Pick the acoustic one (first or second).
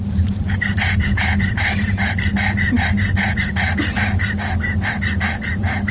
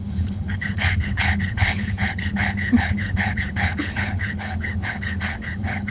first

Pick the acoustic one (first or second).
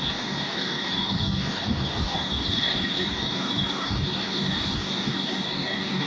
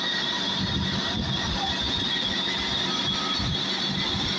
second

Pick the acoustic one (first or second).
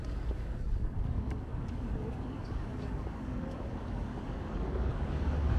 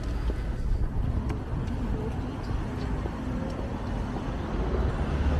second